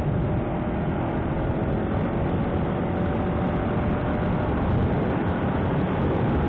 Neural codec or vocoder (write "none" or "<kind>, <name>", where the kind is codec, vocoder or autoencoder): none